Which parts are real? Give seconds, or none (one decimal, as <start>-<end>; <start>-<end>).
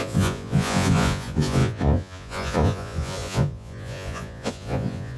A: none